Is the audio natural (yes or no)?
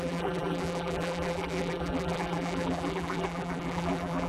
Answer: no